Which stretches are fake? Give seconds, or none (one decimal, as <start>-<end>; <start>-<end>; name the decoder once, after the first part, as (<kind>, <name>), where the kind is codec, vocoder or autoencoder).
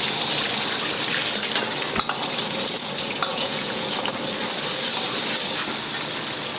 3.3-3.9 (vocoder, Vocos)